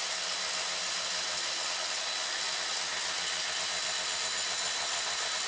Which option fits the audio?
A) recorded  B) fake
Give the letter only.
A